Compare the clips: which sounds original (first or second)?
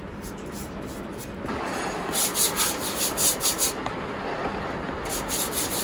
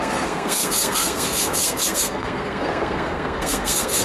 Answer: first